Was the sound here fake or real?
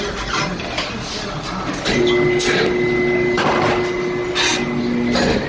real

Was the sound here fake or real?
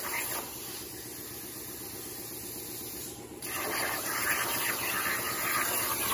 real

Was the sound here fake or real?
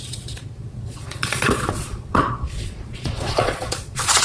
fake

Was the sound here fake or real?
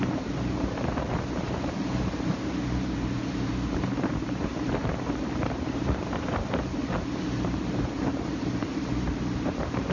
fake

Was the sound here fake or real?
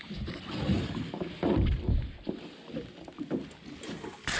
real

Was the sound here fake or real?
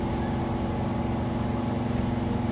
real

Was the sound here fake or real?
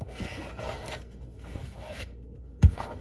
fake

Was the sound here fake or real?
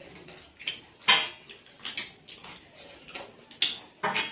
real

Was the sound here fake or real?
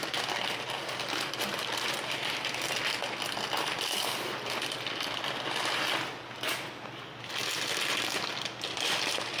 real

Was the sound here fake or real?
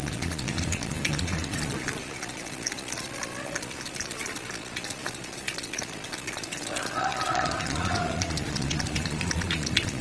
fake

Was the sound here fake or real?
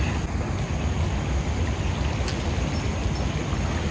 real